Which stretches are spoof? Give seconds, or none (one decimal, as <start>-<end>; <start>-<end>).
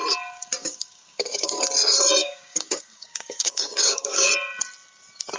0.6-1.6; 2.2-4.3